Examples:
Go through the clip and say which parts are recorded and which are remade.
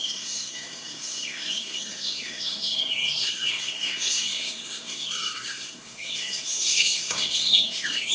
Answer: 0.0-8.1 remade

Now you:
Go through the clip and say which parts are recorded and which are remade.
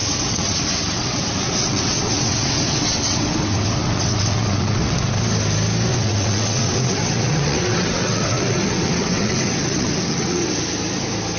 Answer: 0.0-5.2 remade; 5.2-5.9 recorded; 5.9-10.5 remade; 10.5-11.4 recorded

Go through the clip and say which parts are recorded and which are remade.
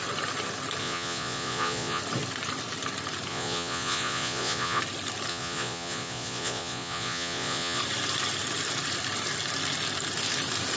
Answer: 0.0-0.8 recorded; 0.8-2.0 remade; 2.0-3.3 recorded; 3.3-4.8 remade; 4.8-5.3 recorded; 5.3-7.8 remade; 7.8-10.8 recorded